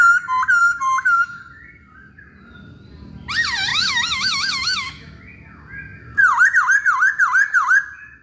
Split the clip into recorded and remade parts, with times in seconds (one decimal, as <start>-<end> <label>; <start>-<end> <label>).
0.0-0.6 recorded; 0.6-1.4 remade; 1.4-3.7 recorded; 3.7-5.2 remade; 5.2-8.2 recorded